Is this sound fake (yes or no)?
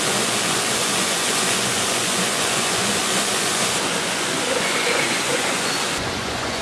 yes